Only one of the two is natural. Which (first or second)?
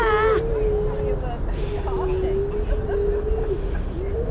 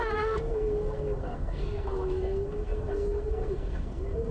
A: first